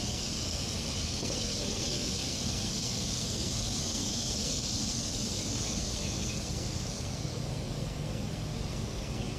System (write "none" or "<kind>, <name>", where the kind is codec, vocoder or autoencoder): codec, SNAC